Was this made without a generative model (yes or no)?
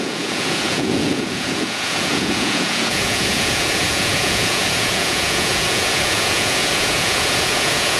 no